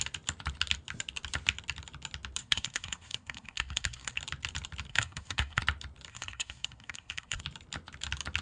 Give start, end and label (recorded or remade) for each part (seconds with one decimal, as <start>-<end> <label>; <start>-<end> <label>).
0.0-2.4 recorded; 2.4-4.2 remade; 4.2-4.9 recorded; 4.9-5.6 remade; 5.6-6.1 recorded; 6.1-7.4 remade; 7.4-8.4 recorded